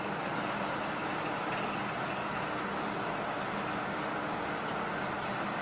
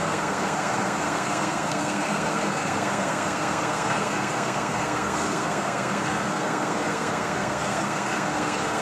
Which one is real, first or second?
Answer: first